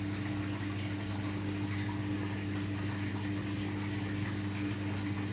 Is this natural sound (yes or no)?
yes